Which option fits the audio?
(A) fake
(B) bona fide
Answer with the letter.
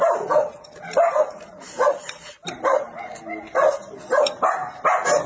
B